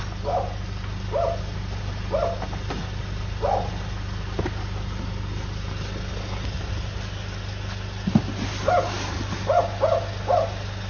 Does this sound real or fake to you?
real